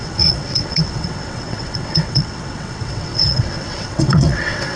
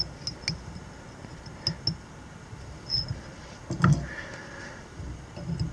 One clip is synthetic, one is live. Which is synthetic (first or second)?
first